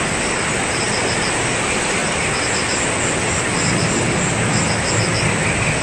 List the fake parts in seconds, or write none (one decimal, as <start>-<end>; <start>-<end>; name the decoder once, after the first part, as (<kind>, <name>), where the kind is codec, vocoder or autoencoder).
none